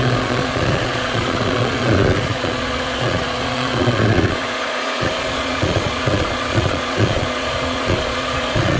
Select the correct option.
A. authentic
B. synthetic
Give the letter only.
B